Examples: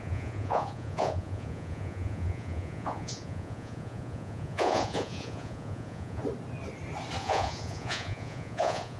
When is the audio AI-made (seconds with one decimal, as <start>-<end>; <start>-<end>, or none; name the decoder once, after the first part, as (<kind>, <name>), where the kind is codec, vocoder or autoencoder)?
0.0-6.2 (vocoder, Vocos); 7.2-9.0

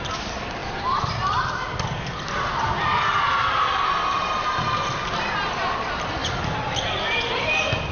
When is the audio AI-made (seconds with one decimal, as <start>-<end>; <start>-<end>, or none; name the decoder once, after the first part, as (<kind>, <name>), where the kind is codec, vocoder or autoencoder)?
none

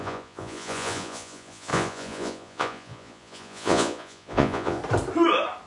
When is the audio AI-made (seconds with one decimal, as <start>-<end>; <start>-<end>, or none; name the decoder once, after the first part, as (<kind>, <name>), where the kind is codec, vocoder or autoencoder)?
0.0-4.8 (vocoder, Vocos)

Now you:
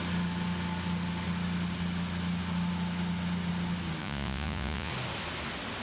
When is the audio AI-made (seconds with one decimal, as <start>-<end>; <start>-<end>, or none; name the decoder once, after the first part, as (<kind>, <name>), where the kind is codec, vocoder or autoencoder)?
4.0-4.9 (vocoder, Vocos)

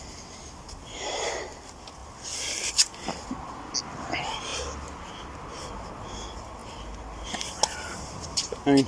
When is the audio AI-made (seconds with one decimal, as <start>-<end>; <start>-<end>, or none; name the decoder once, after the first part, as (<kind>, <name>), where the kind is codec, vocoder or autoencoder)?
none